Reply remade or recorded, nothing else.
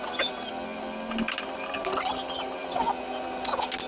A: recorded